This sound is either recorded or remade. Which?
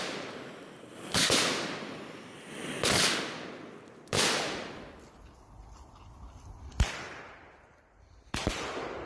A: remade